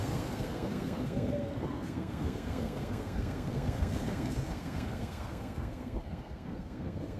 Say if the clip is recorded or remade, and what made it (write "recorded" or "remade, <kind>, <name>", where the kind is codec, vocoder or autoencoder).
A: remade, codec, SNAC